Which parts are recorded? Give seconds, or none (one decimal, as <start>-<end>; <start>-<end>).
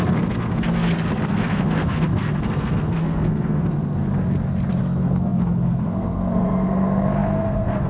4.0-4.8